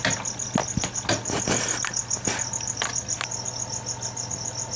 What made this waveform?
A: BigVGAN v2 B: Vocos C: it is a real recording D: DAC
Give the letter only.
C